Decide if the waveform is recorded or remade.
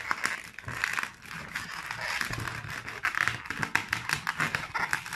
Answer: recorded